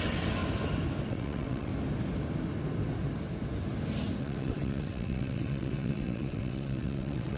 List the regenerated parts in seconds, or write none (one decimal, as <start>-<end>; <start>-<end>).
0.0-0.4; 1.1-1.7; 4.2-7.4